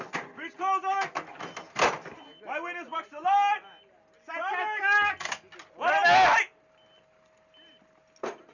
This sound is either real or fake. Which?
real